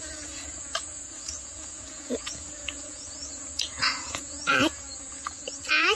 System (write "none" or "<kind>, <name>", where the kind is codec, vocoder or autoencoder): vocoder, Vocos